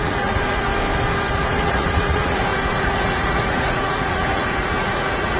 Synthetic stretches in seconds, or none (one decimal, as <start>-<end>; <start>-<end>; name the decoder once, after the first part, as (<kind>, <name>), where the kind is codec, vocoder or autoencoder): 0.0-0.7 (vocoder, Vocos); 1.3-5.4